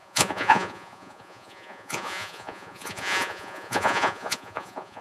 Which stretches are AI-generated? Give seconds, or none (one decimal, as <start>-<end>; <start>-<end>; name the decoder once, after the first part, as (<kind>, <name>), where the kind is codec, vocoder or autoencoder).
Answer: 0.0-5.0 (vocoder, Vocos)